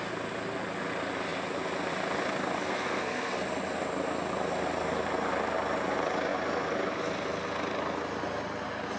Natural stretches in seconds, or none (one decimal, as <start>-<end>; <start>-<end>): 0.0-2.7; 3.4-9.0